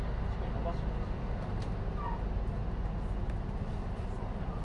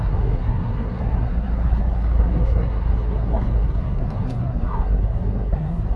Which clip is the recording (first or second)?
first